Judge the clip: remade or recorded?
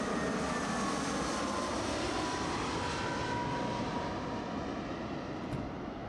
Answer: recorded